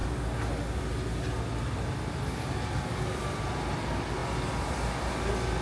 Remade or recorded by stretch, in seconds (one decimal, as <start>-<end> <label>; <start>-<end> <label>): 0.0-5.6 recorded